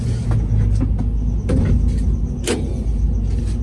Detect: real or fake real